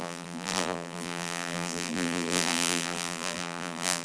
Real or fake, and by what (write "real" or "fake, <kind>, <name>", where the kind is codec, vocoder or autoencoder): fake, vocoder, BigVGAN v2